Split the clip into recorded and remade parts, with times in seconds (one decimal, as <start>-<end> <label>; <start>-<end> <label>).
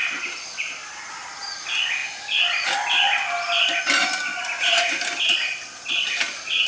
0.0-6.7 recorded